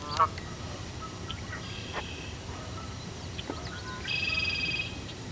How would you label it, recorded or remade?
recorded